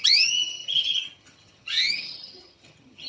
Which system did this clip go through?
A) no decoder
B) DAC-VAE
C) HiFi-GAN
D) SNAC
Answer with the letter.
C